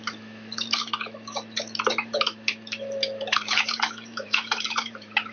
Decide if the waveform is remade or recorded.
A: remade